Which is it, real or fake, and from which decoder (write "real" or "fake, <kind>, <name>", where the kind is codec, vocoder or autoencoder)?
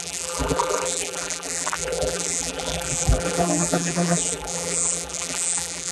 fake, vocoder, BigVGAN v2